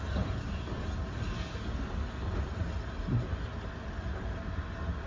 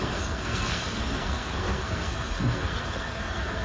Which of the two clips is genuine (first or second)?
first